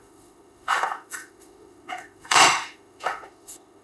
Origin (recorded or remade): remade